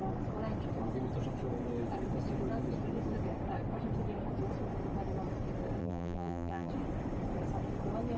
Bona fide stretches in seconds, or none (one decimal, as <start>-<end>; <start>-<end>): 0.0-5.8; 6.7-8.2